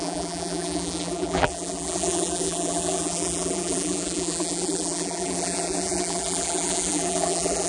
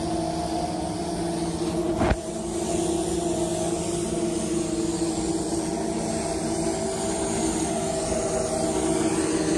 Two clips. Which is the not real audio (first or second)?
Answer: first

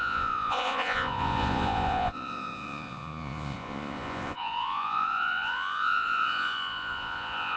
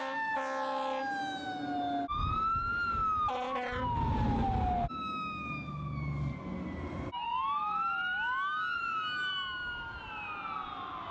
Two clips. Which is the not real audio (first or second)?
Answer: first